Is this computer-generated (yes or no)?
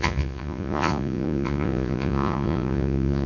yes